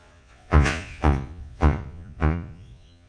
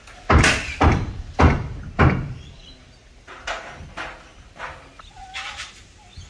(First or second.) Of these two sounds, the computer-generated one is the first